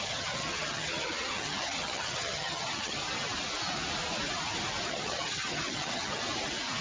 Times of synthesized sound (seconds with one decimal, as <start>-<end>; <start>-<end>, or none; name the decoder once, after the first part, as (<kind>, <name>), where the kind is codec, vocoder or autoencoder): 0.0-3.0 (vocoder, HiFi-GAN); 4.9-6.2